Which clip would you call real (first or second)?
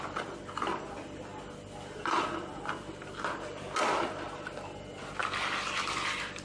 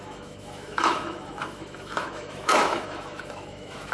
first